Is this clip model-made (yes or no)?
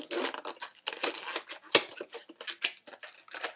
no